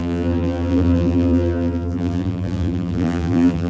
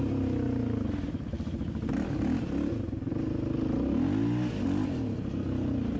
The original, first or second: second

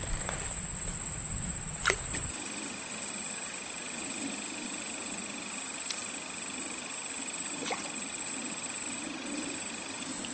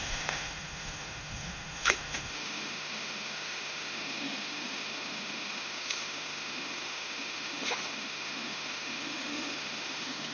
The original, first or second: first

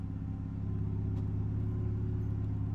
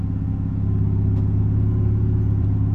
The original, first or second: first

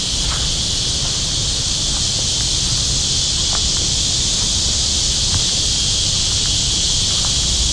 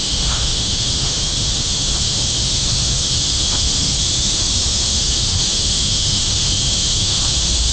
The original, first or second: first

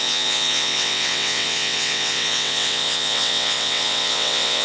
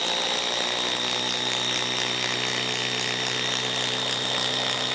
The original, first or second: second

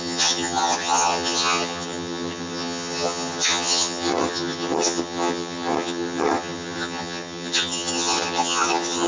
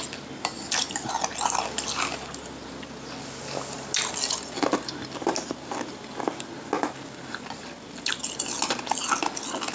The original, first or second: second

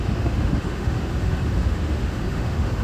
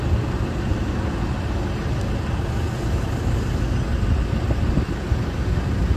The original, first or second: second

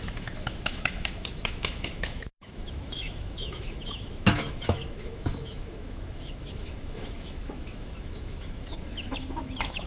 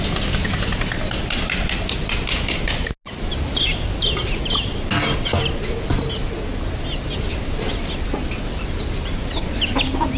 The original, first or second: second